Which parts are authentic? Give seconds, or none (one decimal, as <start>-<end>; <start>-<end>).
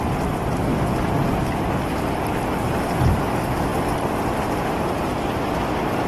1.0-3.0; 3.7-4.9